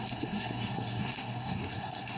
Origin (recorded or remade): remade